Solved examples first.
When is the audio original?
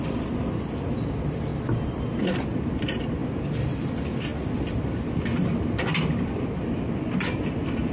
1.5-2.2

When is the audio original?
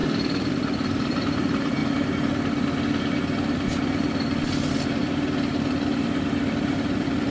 1.8-6.0